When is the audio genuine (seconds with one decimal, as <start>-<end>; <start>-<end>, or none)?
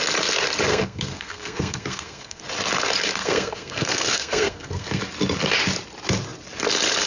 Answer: 0.0-0.7; 2.4-3.2; 5.0-7.1